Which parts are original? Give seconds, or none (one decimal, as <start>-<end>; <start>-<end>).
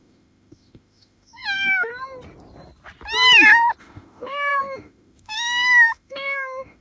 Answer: 1.9-3.8